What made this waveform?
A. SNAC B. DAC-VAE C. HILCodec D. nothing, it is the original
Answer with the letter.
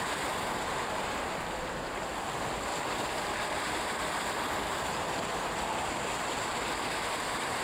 D